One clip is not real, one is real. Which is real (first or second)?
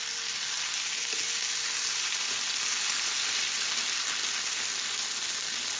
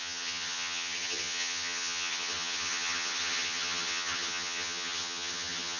first